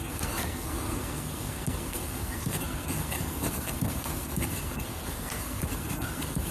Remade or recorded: remade